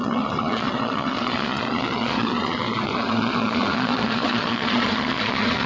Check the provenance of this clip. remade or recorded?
remade